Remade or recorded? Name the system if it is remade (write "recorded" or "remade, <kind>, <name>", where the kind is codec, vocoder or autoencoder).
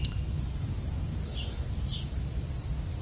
recorded